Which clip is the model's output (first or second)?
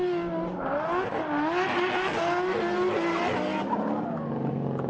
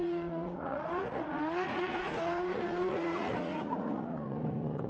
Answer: second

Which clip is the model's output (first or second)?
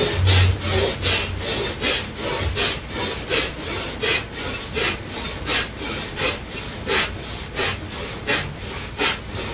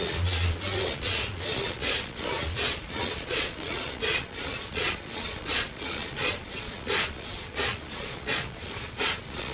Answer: second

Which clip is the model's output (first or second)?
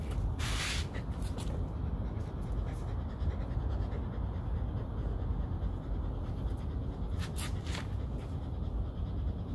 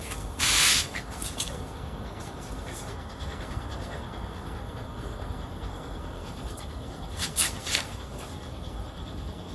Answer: second